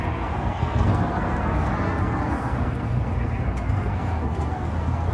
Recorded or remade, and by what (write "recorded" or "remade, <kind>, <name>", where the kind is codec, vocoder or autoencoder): remade, codec, SNAC